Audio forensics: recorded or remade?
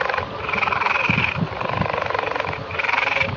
remade